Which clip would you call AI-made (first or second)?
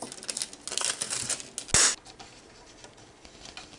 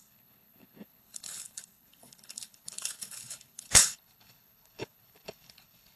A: second